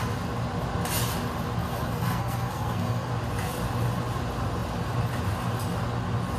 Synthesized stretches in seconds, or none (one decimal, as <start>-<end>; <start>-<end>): 1.6-3.1